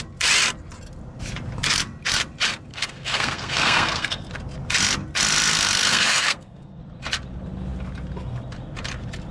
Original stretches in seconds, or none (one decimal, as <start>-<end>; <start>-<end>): 0.0-2.7; 4.3-5.8; 6.8-9.3